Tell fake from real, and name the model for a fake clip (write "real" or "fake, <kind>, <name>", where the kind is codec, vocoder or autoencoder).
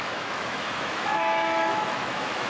fake, autoencoder, DAC-VAE